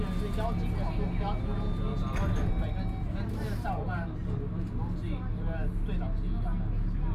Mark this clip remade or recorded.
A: recorded